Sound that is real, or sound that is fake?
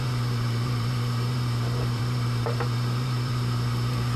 fake